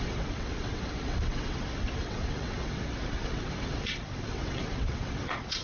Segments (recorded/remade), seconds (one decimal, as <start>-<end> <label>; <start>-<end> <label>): 0.0-5.6 remade